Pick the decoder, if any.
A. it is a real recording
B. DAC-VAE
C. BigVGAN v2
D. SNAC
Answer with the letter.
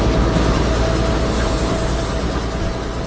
A